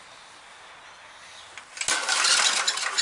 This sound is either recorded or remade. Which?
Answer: recorded